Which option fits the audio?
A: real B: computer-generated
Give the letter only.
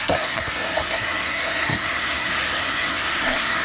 B